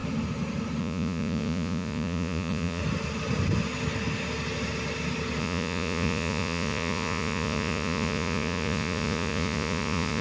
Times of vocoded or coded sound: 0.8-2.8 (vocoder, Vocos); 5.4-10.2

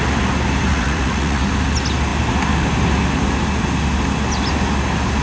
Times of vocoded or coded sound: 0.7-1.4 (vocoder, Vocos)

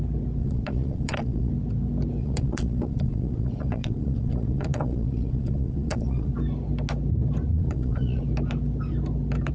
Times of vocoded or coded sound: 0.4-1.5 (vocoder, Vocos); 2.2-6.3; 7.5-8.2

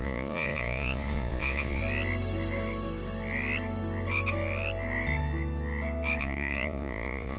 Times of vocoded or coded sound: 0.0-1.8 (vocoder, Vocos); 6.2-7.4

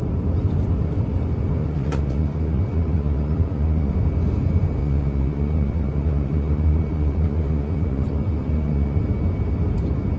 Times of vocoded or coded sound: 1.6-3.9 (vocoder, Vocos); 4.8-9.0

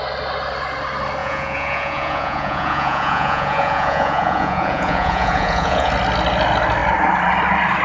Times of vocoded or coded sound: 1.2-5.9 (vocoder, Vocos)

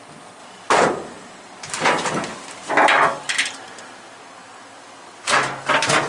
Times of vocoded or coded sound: none